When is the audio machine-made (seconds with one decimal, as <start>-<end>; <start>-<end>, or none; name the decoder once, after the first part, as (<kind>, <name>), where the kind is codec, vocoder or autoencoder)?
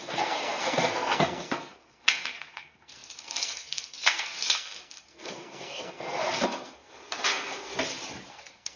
0.0-7.7 (codec, SNAC); 8.3-8.8